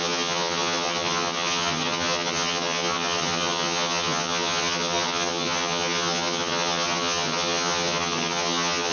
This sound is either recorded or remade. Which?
remade